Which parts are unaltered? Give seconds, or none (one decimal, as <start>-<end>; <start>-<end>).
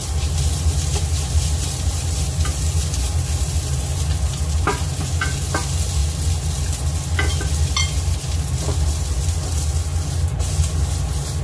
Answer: 0.0-11.4